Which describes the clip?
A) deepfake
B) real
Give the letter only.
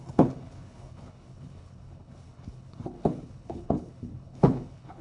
A